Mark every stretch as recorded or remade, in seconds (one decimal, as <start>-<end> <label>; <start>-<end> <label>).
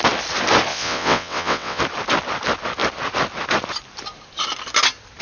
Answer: 0.0-0.7 recorded; 0.7-1.8 remade; 1.8-5.2 recorded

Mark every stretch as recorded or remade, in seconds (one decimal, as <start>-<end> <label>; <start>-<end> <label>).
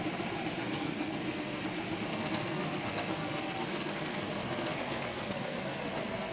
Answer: 0.0-0.6 recorded; 0.6-1.6 remade; 1.6-2.1 recorded; 2.1-6.3 remade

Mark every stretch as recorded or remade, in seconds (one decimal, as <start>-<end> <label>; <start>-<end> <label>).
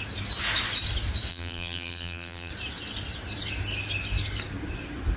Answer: 0.0-1.3 recorded; 1.3-2.5 remade; 2.5-5.2 recorded